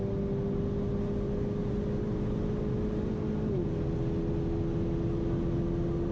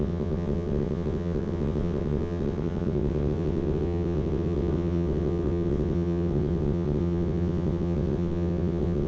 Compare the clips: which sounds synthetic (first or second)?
second